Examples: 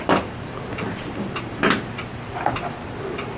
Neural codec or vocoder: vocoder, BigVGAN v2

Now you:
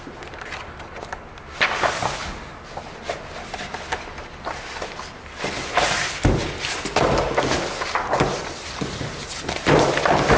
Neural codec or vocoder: none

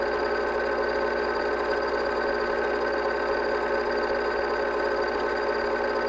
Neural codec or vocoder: none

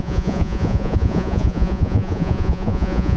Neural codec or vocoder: vocoder, Vocos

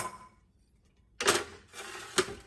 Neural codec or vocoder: none